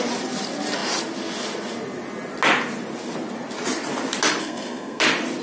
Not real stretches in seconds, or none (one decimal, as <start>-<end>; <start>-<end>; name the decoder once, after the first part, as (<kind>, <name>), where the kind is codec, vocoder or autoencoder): 4.4-5.0 (codec, SNAC)